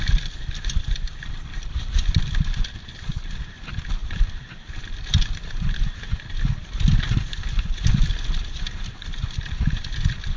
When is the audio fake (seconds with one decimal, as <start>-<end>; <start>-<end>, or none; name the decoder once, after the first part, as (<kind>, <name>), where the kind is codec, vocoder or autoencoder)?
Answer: 4.0-4.8 (vocoder, BigVGAN v2)